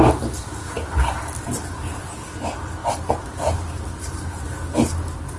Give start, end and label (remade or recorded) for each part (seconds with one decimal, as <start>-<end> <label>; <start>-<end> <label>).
0.0-5.4 recorded